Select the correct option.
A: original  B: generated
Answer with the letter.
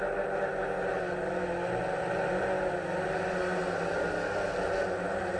A